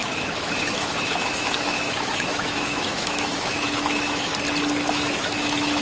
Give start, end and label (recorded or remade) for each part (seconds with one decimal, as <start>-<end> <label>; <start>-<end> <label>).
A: 0.0-4.3 remade; 4.3-4.9 recorded; 4.9-5.8 remade